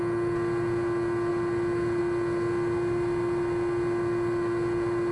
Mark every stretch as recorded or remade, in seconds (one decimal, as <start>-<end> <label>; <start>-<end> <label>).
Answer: 0.0-5.1 recorded